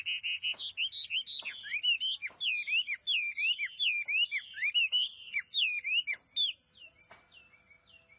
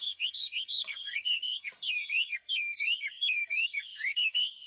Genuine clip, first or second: first